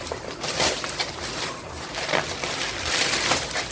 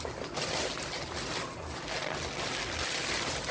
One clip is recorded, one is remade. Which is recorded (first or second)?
second